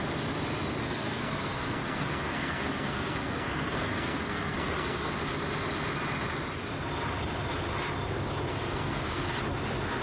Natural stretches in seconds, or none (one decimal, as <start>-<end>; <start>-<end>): 0.0-0.8; 5.2-8.5; 9.4-10.0